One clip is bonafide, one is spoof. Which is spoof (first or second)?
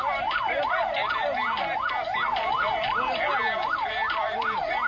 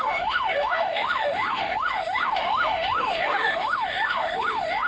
second